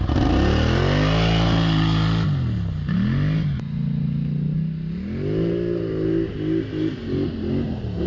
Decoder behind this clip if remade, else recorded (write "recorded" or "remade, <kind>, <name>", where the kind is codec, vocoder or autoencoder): recorded